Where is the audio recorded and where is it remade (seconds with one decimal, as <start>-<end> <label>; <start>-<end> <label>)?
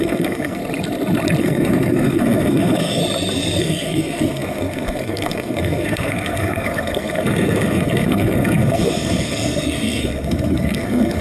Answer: 0.0-0.6 remade; 0.6-1.4 recorded; 1.4-3.0 remade; 3.0-3.6 recorded; 3.6-11.2 remade